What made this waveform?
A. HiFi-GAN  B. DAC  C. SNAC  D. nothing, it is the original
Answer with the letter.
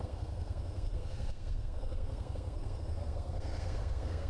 C